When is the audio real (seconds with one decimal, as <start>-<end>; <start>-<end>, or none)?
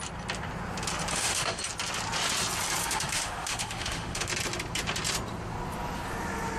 0.0-1.1; 1.6-2.8; 4.3-6.6